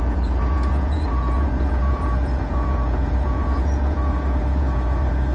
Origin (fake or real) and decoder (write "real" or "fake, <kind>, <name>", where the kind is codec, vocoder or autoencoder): fake, vocoder, Vocos